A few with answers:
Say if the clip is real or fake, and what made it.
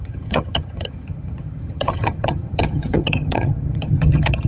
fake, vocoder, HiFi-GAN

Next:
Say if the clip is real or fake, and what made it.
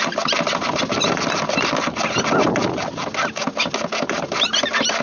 real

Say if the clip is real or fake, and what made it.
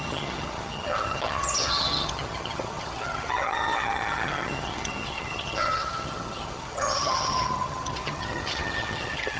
fake, vocoder, HiFi-GAN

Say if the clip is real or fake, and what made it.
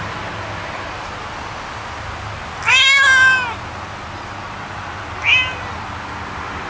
real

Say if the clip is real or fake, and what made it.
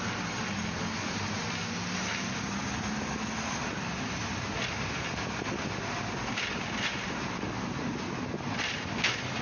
real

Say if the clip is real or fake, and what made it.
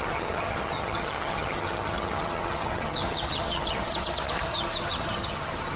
fake, vocoder, HiFi-GAN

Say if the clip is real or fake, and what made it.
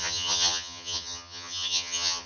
fake, vocoder, HiFi-GAN